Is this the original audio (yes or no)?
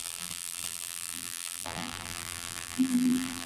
no